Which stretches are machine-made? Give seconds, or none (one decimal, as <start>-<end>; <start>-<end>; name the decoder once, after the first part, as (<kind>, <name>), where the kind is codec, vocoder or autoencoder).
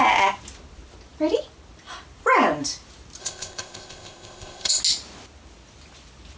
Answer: 3.2-4.8 (codec, ZipCodec)